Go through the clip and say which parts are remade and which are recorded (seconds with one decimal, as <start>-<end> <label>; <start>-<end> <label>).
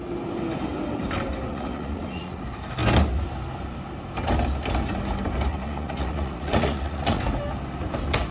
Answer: 0.0-1.5 recorded; 1.5-2.4 remade; 2.4-5.5 recorded; 5.5-7.2 remade; 7.2-8.3 recorded